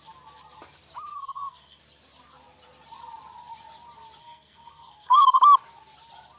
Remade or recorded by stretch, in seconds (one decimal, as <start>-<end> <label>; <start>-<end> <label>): 0.0-1.1 recorded; 1.1-1.8 remade; 1.8-4.2 recorded; 4.2-5.4 remade; 5.4-6.4 recorded